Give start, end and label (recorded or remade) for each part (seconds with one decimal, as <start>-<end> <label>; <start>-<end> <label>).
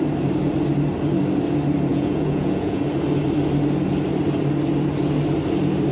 0.0-1.9 recorded; 1.9-2.8 remade; 2.8-5.9 recorded